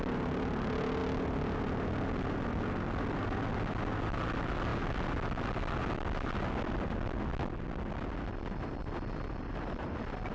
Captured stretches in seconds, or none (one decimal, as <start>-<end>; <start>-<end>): 0.0-10.3